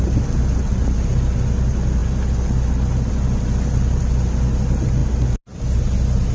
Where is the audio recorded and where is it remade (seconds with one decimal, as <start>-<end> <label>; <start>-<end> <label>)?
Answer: 0.0-6.3 recorded